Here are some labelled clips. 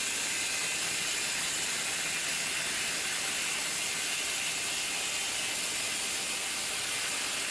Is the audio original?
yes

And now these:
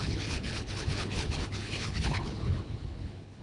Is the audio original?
no